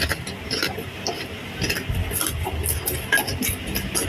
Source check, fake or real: real